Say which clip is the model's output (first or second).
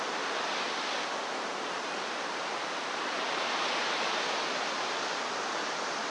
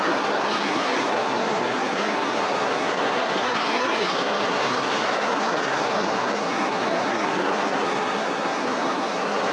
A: second